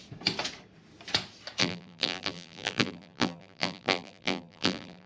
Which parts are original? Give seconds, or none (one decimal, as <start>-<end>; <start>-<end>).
0.0-1.6